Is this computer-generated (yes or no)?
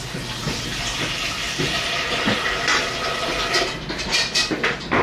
no